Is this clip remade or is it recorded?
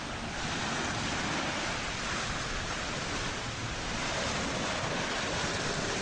recorded